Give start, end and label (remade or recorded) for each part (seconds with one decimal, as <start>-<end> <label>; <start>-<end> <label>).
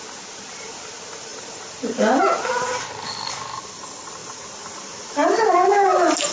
0.0-6.3 recorded